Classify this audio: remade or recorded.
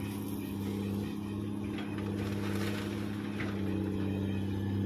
recorded